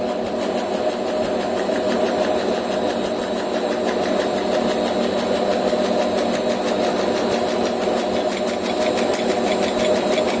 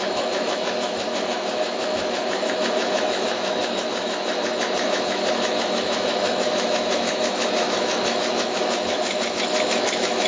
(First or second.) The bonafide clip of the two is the first